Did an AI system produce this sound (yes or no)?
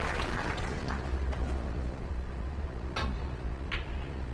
yes